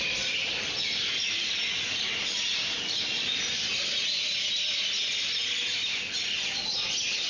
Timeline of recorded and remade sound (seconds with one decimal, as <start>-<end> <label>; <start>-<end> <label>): 0.0-0.4 recorded; 0.4-3.7 remade; 3.7-7.3 recorded